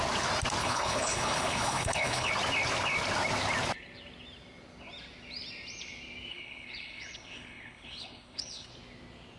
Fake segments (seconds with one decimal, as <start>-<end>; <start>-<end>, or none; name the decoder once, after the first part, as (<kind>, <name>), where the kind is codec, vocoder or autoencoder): 0.6-2.3 (codec, HILCodec); 6.3-8.7